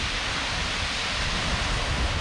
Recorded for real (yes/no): yes